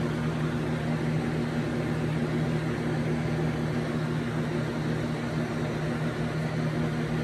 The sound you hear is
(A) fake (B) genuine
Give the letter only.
B